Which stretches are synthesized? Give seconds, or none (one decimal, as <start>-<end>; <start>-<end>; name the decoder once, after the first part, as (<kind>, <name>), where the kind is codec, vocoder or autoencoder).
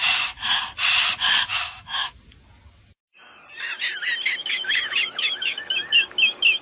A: 1.5-2.2 (autoencoder, DAC-VAE); 4.4-6.6